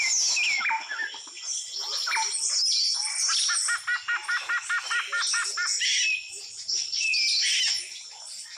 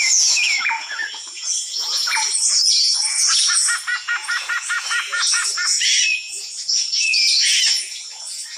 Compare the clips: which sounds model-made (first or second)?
second